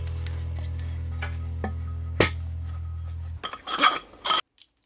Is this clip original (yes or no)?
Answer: yes